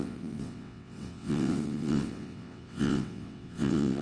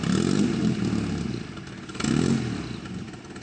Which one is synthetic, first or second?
first